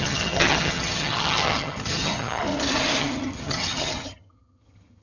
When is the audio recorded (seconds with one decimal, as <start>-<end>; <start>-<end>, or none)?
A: 2.4-3.0